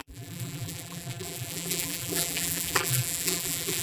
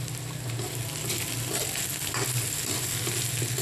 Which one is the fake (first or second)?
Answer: first